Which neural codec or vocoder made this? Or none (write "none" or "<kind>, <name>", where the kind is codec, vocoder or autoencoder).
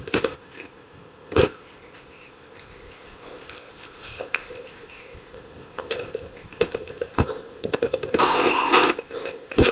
codec, ZipCodec